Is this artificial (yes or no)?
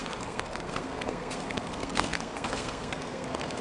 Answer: yes